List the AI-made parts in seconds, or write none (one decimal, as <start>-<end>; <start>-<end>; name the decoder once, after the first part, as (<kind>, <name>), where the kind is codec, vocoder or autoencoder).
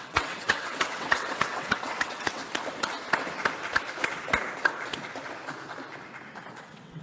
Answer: 0.0-2.4 (vocoder, WaveNeXt); 6.5-7.0